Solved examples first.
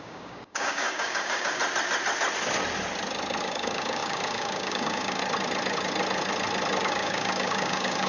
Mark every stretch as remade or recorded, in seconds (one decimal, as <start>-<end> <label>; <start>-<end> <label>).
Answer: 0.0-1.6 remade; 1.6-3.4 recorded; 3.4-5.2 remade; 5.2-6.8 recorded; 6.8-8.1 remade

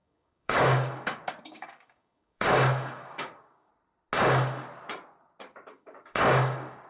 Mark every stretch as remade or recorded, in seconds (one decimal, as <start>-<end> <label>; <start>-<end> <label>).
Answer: 0.0-3.7 remade; 3.7-5.7 recorded; 5.7-6.9 remade

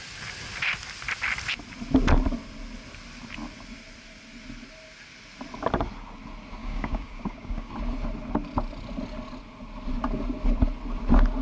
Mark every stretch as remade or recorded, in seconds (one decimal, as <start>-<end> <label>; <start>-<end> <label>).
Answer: 0.0-6.6 recorded; 6.6-7.7 remade; 7.7-11.4 recorded

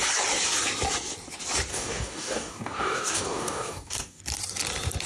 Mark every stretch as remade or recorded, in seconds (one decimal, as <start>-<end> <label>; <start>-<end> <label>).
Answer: 0.0-1.7 recorded; 1.7-4.2 remade; 4.2-5.1 recorded

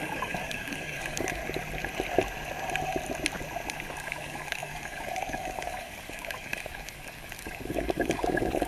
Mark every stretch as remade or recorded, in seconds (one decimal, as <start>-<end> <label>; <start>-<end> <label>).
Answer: 0.0-1.4 remade; 1.4-3.7 recorded; 3.7-8.7 remade

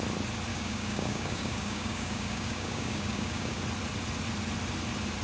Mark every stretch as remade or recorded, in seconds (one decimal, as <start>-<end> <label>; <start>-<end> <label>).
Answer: 0.0-0.5 recorded; 0.5-3.6 remade; 3.6-5.2 recorded